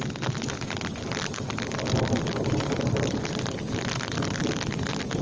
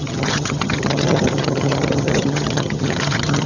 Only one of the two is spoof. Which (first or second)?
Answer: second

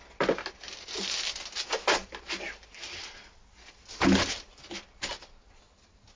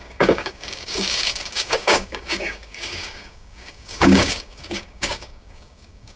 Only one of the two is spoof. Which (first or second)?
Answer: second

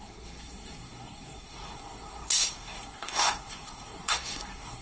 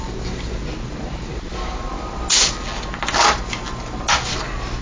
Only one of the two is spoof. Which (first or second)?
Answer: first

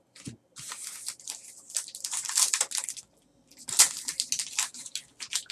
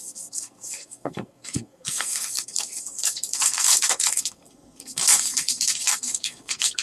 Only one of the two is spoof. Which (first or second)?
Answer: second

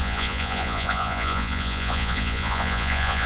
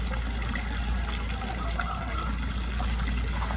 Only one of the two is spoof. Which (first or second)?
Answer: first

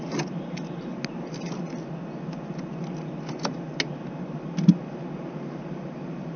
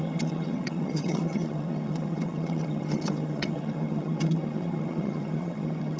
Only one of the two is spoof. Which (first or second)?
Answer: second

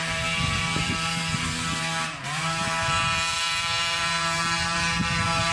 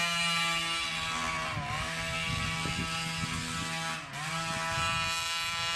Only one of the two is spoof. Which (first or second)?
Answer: first